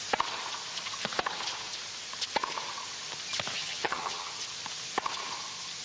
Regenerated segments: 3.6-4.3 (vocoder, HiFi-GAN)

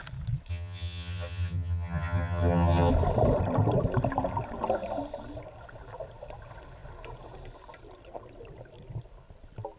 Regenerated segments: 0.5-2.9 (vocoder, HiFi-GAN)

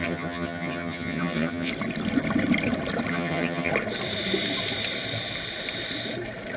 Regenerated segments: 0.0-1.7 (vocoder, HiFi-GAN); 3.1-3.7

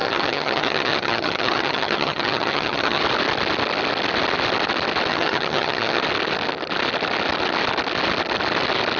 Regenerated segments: 0.0-3.0 (vocoder, HiFi-GAN); 5.1-6.0